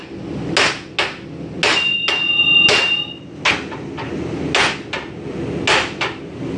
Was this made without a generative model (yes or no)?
yes